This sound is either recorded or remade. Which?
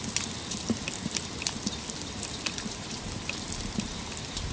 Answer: recorded